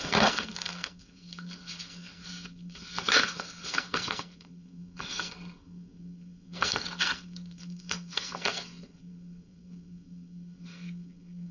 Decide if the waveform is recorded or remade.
remade